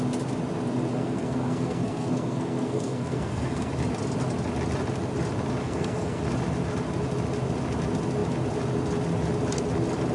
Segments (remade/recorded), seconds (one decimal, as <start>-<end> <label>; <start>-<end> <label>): 0.0-0.9 recorded; 0.9-3.7 remade; 3.7-5.6 recorded; 5.6-6.2 remade; 6.2-10.1 recorded